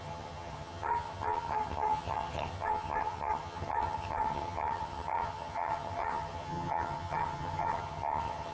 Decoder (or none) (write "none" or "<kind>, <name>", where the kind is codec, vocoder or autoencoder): vocoder, HiFi-GAN